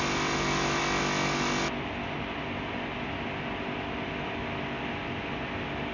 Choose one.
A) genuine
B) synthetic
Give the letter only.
A